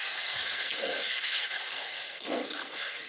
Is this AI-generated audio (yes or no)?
yes